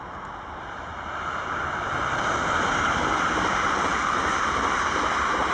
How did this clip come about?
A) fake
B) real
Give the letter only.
A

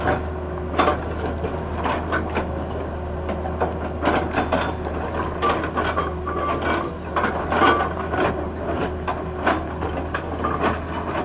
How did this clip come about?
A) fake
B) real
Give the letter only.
B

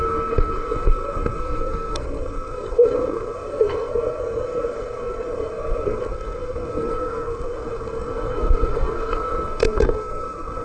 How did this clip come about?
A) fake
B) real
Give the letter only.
A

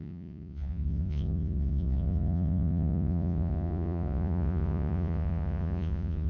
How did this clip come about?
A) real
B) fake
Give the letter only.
B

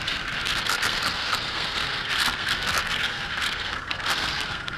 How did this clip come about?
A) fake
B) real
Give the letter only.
A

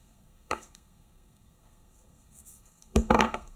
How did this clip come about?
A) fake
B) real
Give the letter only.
A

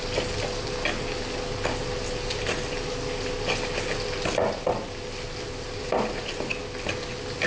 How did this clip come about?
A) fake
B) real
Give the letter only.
B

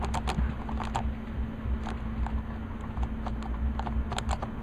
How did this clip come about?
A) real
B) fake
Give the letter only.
A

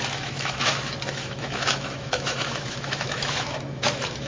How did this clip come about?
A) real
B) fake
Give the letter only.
B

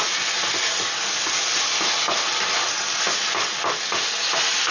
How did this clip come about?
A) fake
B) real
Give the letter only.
B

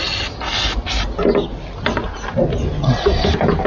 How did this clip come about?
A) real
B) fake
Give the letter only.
A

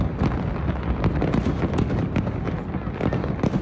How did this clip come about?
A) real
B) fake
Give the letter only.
A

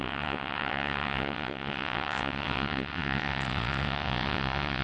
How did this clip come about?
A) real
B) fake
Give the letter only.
B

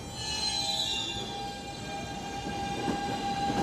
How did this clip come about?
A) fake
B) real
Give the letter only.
B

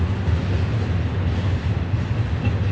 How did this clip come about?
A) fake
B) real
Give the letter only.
B